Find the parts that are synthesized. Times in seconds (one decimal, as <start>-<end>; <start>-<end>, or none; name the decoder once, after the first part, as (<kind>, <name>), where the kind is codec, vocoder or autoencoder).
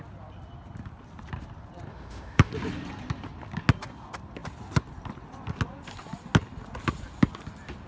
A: 1.9-2.5 (autoencoder, DAC-VAE)